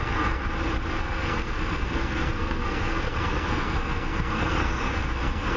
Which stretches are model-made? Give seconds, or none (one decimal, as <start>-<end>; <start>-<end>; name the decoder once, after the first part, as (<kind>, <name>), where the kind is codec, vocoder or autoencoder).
0.0-0.4 (codec, SNAC); 0.9-5.6